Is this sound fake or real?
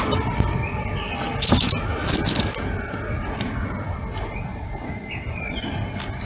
real